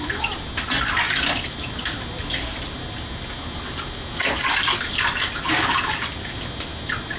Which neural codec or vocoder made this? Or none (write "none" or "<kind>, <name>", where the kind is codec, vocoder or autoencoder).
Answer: none